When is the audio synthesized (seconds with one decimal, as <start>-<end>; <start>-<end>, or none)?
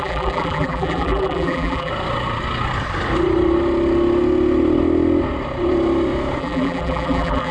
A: 0.0-1.9; 6.4-7.5